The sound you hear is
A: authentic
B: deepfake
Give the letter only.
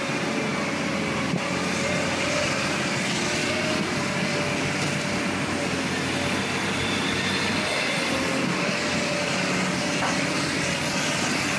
A